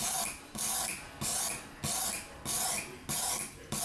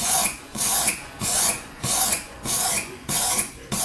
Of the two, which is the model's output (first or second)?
second